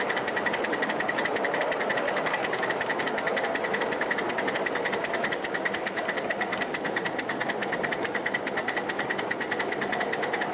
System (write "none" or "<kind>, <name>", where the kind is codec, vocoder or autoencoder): none